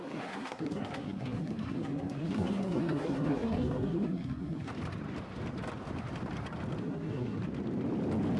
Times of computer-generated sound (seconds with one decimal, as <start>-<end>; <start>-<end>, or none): 0.0-4.7; 6.8-7.4